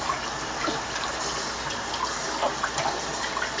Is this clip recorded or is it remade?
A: recorded